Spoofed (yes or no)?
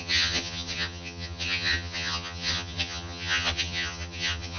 yes